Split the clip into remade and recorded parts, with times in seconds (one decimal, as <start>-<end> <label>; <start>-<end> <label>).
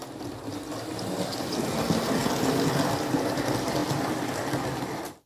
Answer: 0.0-5.3 recorded